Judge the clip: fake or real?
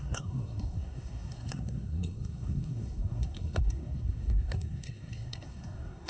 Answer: fake